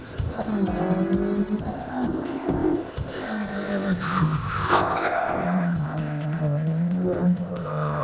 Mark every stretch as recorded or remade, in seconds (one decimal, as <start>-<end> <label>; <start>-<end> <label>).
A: 0.0-0.5 remade; 0.5-1.6 recorded; 1.6-8.0 remade